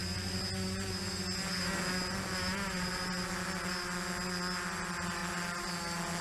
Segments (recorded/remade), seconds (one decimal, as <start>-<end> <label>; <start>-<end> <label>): 0.0-6.2 recorded